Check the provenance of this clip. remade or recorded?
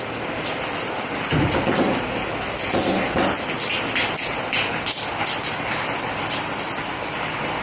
recorded